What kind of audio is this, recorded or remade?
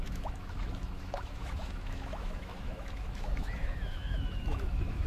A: remade